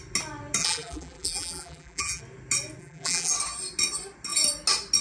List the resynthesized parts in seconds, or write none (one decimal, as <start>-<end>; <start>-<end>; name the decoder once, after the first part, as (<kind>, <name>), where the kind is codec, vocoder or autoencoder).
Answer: 0.6-2.2 (vocoder, BigVGAN v2); 2.8-3.3